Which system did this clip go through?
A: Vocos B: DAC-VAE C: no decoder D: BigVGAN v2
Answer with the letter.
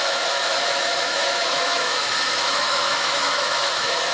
B